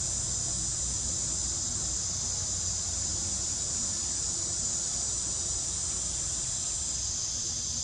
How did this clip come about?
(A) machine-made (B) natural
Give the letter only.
B